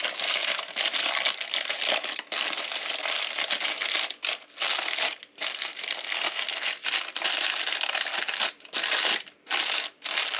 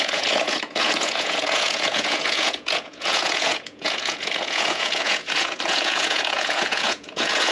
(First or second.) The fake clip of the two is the second